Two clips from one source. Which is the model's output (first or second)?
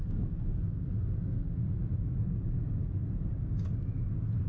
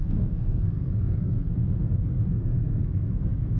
second